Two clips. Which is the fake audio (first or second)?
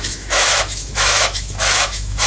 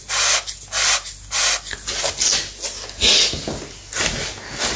first